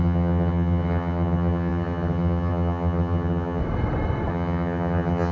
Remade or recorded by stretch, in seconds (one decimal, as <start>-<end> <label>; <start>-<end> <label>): 0.0-3.6 remade; 3.6-4.3 recorded; 4.3-5.3 remade